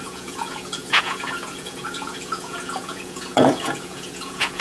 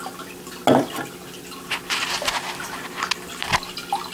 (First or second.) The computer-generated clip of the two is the first